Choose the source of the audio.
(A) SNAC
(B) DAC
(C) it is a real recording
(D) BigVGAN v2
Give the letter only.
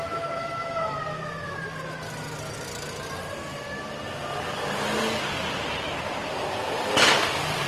C